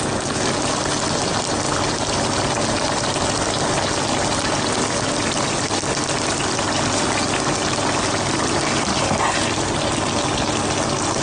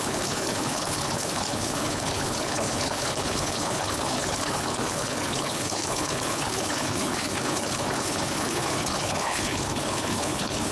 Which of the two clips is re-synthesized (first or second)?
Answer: second